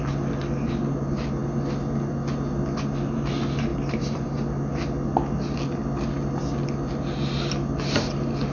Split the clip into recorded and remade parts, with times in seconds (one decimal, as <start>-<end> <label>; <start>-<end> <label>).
0.0-8.5 recorded